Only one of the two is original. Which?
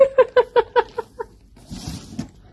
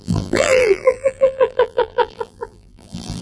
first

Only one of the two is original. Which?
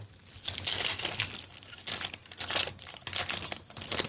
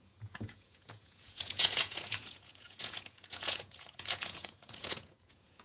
first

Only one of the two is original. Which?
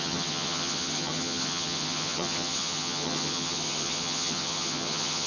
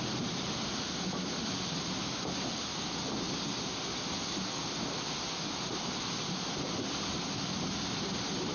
second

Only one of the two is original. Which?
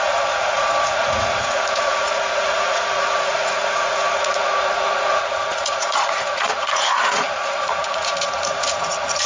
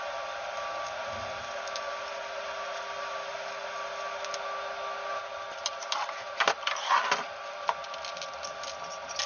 second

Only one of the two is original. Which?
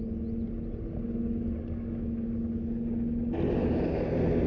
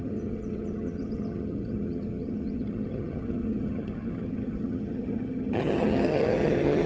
first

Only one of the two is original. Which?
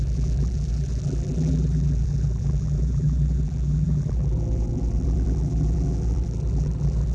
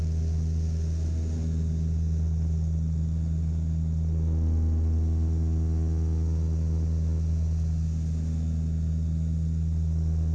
second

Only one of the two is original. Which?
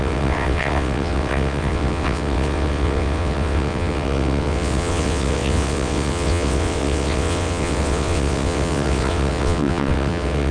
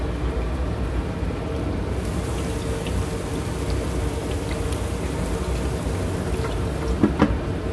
second